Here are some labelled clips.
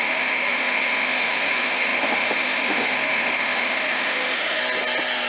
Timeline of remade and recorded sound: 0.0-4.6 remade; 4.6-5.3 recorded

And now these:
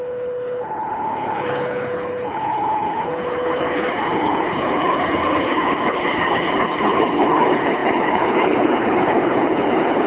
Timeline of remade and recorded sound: 0.0-10.1 remade

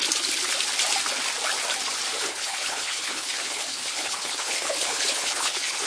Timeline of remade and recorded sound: 0.0-2.2 recorded; 2.2-5.9 remade

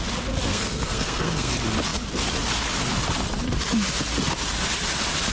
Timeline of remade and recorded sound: 0.0-0.5 recorded; 0.5-1.5 remade; 1.5-5.3 recorded

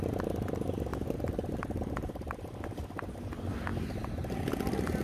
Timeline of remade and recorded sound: 0.0-0.9 recorded; 0.9-2.6 remade; 2.6-3.7 recorded; 3.7-4.5 remade; 4.5-5.0 recorded

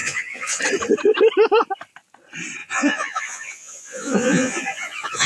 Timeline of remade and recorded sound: 0.0-0.6 remade; 0.6-2.6 recorded; 2.6-5.3 remade

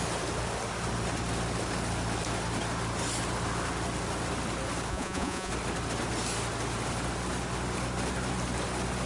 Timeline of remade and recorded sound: 0.0-4.9 recorded; 4.9-5.5 remade; 5.5-9.1 recorded

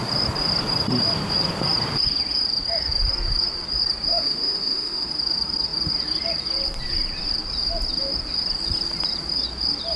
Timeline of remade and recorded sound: 0.0-4.1 recorded; 4.1-5.1 remade; 5.1-10.0 recorded